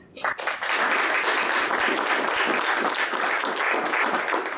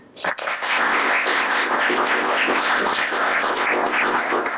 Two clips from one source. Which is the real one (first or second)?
first